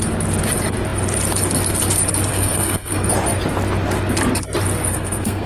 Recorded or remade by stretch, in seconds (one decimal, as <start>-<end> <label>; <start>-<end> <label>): 0.0-2.3 recorded; 2.3-3.1 remade; 3.1-4.9 recorded; 4.9-5.5 remade